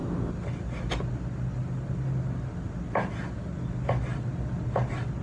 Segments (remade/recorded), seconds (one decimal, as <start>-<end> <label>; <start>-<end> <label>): 0.0-5.2 recorded